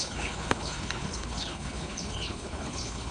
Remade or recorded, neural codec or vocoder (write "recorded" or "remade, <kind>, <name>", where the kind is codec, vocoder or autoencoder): remade, codec, HILCodec